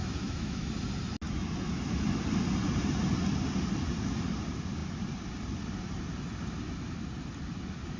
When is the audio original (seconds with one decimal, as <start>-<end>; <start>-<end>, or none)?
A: 0.7-8.0